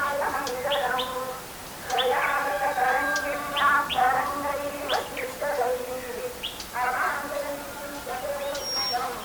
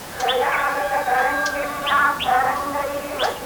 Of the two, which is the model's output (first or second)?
second